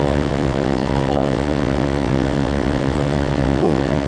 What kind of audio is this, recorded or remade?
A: remade